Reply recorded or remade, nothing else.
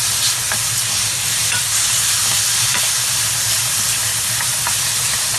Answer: recorded